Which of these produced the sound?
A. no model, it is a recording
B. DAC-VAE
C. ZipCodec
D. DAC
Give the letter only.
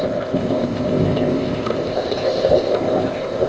C